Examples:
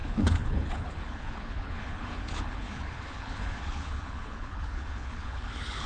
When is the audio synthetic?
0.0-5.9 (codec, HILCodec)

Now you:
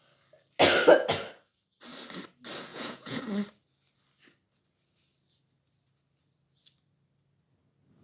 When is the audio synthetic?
2.7-3.2 (vocoder, Vocos)

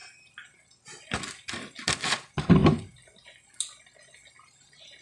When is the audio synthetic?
none

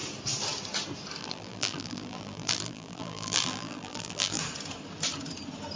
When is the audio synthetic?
1.2-4.4 (vocoder, BigVGAN v2)